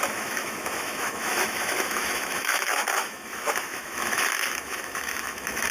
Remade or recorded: remade